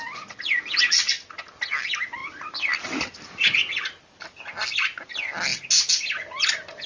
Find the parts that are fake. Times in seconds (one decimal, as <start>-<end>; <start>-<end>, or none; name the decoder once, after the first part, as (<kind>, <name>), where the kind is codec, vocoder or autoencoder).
none